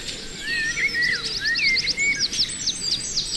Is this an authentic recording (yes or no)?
yes